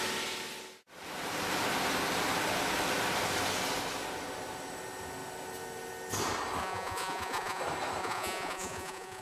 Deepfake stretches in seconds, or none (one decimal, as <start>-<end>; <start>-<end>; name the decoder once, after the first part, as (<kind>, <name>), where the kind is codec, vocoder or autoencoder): 6.6-7.6 (vocoder, Vocos); 8.0-9.2